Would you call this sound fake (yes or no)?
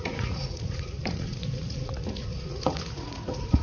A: yes